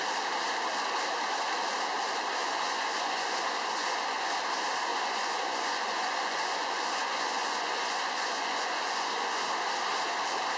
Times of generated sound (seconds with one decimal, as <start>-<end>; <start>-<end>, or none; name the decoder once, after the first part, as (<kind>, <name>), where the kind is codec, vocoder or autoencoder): 2.4-4.3 (vocoder, Vocos); 4.9-9.5